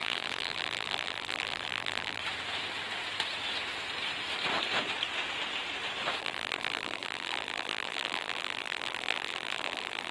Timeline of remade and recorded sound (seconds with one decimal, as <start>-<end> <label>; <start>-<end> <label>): 0.0-2.2 remade; 2.2-6.2 recorded; 6.2-10.1 remade